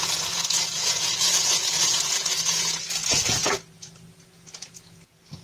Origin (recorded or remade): remade